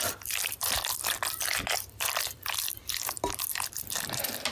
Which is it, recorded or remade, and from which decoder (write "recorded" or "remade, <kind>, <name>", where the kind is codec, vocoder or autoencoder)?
remade, vocoder, BigVGAN v2